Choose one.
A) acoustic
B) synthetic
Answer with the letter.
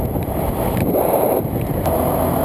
B